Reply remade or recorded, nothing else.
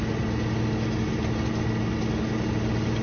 recorded